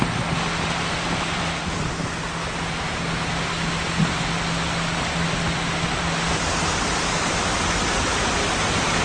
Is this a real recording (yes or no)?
yes